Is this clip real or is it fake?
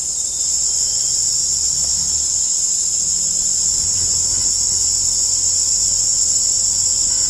real